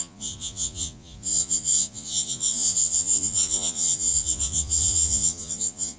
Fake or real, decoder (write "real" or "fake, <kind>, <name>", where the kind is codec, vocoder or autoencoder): fake, vocoder, Vocos